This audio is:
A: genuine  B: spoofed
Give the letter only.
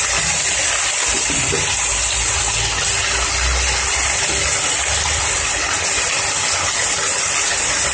A